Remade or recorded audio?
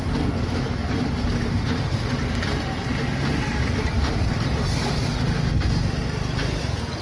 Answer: recorded